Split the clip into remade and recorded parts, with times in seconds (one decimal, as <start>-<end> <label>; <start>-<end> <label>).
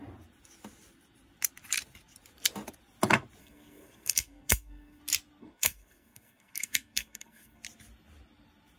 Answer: 0.0-3.4 recorded; 3.4-5.0 remade; 5.0-5.4 recorded; 5.4-7.6 remade; 7.6-8.8 recorded